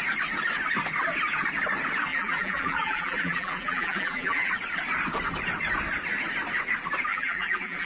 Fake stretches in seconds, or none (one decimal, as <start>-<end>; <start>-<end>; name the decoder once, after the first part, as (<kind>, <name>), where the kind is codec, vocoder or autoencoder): 2.1-4.5 (vocoder, BigVGAN v2); 7.1-7.9